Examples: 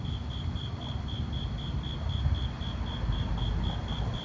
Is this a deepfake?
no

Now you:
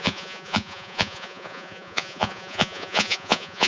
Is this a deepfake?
yes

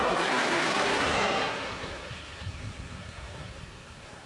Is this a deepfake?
yes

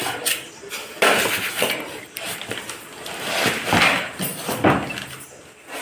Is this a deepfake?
no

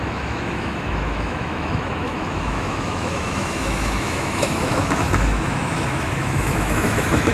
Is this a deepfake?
yes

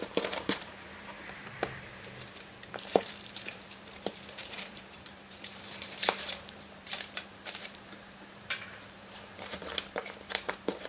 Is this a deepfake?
yes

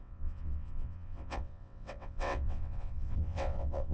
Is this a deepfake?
yes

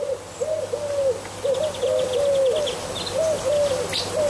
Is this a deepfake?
no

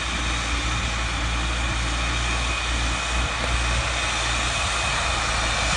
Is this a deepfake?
no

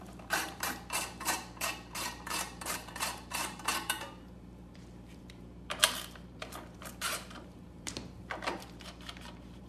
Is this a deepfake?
yes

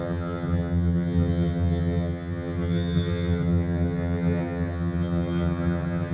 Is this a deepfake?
yes